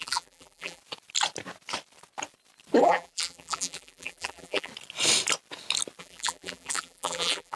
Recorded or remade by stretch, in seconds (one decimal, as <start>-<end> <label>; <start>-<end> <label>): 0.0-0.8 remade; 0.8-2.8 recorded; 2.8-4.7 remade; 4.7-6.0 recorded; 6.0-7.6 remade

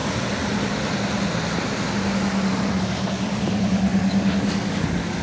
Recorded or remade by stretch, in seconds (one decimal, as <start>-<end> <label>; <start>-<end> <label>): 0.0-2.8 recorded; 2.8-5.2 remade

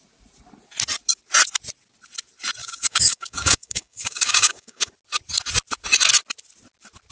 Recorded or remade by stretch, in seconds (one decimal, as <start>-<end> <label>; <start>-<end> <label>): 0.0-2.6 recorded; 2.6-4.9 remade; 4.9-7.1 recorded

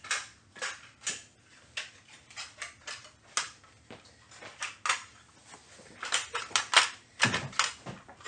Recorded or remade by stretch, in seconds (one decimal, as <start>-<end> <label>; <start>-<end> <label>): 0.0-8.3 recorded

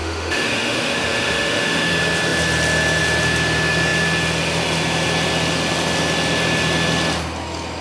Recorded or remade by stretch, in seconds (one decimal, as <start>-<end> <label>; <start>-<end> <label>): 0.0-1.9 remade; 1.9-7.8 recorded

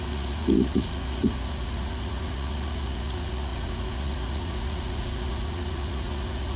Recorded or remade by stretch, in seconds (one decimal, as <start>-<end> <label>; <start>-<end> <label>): 0.0-6.6 remade

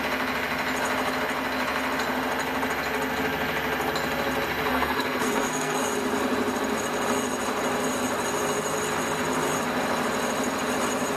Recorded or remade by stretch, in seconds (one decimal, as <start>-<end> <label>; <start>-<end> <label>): 0.0-4.7 recorded; 4.7-5.8 remade; 5.8-11.2 recorded